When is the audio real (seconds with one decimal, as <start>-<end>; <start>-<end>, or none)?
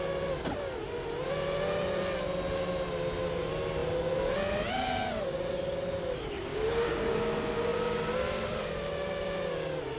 0.0-6.5; 7.2-10.0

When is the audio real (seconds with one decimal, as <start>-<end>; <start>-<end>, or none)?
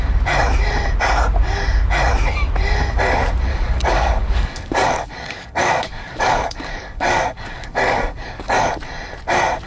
0.0-3.5; 8.7-9.7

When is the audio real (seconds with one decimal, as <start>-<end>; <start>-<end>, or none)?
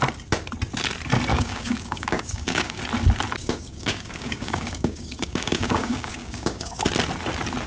0.0-1.3; 2.8-3.4; 6.8-7.7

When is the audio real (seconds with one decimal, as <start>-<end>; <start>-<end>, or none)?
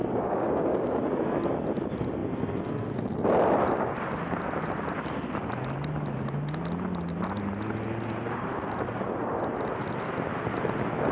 1.0-11.1